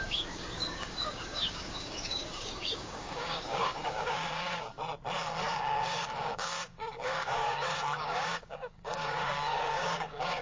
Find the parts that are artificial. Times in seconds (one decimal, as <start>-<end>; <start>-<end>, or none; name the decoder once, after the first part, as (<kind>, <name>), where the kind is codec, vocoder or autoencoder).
0.0-4.7 (codec, DAC); 5.5-10.4